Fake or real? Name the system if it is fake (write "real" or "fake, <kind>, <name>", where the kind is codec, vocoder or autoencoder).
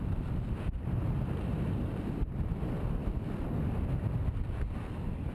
real